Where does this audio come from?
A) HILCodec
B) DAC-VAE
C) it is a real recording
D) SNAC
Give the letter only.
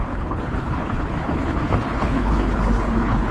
A